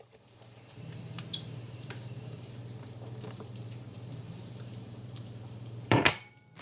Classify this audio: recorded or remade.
remade